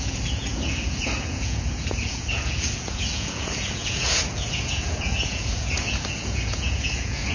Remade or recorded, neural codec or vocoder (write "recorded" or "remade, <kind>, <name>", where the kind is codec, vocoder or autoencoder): remade, vocoder, Vocos